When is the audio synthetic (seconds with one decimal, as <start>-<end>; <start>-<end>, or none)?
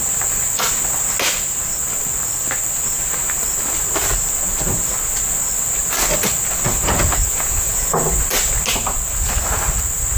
7.3-7.9